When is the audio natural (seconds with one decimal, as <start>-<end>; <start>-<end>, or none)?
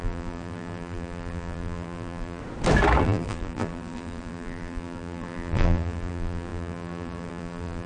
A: 2.4-3.0